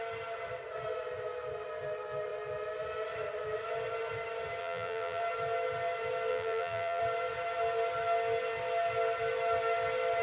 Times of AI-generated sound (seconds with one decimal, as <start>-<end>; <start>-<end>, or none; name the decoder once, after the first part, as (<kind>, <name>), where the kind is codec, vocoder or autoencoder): 4.6-5.2 (vocoder, BigVGAN v2); 6.3-7.0